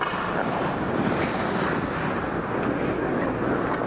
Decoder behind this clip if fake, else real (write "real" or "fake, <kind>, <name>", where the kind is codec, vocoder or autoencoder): real